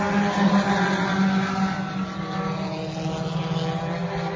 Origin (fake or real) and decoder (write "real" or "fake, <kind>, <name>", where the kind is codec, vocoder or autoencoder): real